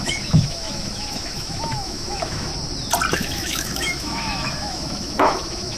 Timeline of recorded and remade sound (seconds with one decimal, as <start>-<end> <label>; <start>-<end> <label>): 0.0-2.5 remade; 2.5-3.1 recorded; 3.1-5.8 remade